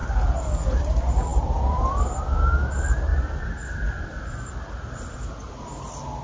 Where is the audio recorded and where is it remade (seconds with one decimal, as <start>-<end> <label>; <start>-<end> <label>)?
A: 0.0-1.3 recorded; 1.3-2.0 remade; 2.0-3.1 recorded; 3.1-4.5 remade; 4.5-6.2 recorded